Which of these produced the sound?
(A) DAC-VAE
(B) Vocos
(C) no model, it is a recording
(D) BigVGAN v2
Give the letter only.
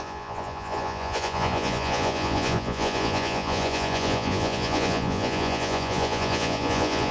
B